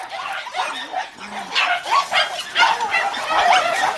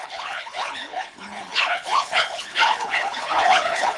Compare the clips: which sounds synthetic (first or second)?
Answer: second